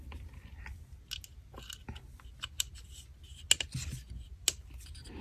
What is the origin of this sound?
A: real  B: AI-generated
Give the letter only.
A